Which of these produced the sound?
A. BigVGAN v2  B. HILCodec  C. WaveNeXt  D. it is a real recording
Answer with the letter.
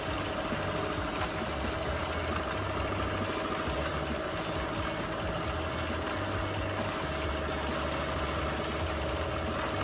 D